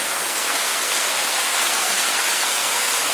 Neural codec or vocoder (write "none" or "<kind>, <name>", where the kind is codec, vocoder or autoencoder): codec, SNAC